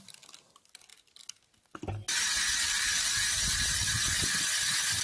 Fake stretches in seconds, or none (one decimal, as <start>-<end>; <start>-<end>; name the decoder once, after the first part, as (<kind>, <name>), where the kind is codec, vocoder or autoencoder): none